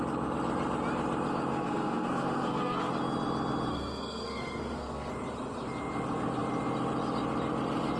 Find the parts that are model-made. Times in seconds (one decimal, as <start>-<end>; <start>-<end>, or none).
1.5-2.9; 3.7-5.1